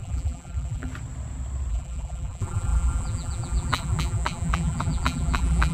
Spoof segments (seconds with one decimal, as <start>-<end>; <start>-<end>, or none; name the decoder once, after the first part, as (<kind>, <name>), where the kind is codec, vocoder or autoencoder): 0.0-0.9 (vocoder, BigVGAN v2); 1.7-5.7